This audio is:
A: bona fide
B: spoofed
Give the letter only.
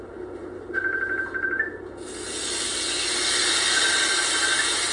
A